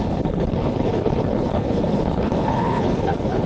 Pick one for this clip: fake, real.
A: fake